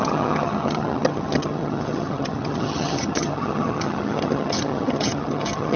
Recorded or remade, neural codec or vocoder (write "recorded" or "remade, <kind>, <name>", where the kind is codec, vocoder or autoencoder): remade, vocoder, HiFi-GAN